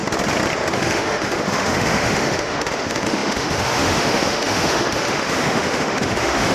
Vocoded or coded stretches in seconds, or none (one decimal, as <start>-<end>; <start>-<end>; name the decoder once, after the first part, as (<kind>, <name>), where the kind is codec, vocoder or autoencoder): 0.7-6.5 (autoencoder, DAC-VAE)